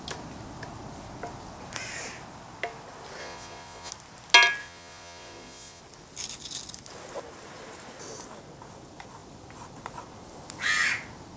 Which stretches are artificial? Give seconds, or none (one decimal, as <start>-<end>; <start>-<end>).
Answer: 3.2-3.9; 4.6-5.8